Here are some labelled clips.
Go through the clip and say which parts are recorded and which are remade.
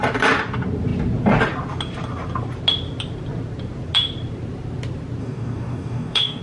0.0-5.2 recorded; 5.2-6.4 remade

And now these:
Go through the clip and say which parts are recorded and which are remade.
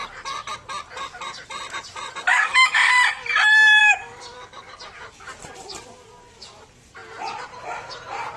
0.0-2.3 recorded; 2.3-2.9 remade; 2.9-3.8 recorded; 3.8-4.8 remade; 4.8-8.4 recorded